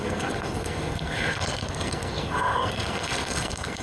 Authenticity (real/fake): fake